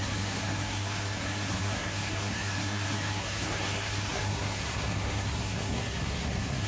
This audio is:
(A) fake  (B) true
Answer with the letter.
A